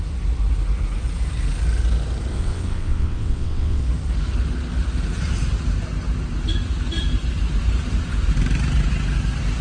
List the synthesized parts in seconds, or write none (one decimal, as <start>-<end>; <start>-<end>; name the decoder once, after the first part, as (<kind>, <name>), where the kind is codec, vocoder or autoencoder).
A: 2.3-3.8 (vocoder, WaveNeXt)